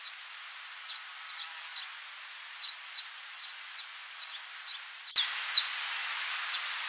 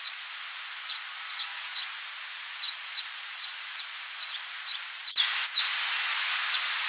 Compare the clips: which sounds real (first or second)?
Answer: first